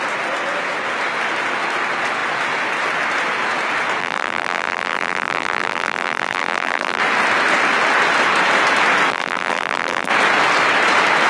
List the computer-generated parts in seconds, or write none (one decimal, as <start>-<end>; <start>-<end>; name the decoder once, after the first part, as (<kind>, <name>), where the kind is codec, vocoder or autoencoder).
4.0-7.0 (vocoder, BigVGAN v2); 9.1-10.1